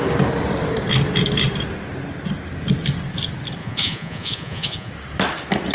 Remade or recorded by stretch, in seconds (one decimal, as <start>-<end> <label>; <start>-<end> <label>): 0.0-3.6 recorded; 3.6-4.9 remade; 4.9-5.7 recorded